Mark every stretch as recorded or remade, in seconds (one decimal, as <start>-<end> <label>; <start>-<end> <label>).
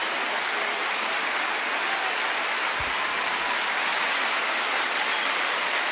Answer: 0.0-5.9 recorded